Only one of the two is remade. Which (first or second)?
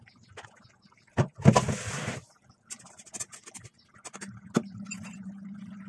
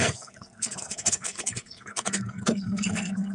second